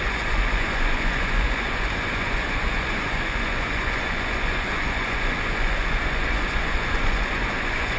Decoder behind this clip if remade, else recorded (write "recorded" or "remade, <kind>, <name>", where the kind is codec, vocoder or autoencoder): remade, vocoder, Vocos